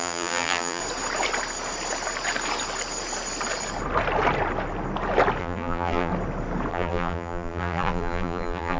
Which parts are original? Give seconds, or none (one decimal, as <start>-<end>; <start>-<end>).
0.8-5.4; 6.1-6.7